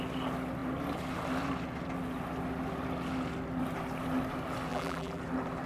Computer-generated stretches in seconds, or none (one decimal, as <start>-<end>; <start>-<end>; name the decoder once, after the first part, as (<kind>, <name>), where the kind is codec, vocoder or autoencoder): 4.7-5.2 (vocoder, BigVGAN v2)